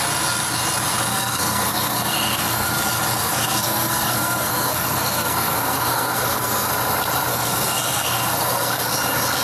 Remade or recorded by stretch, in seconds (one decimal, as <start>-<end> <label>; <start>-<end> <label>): 0.0-1.1 recorded; 1.1-2.7 remade; 2.7-3.2 recorded; 3.2-6.7 remade; 6.7-7.3 recorded; 7.3-8.9 remade; 8.9-9.4 recorded